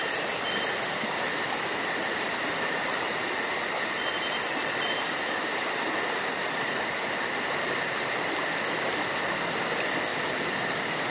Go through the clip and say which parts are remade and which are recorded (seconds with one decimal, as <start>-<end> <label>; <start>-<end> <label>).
0.0-11.1 recorded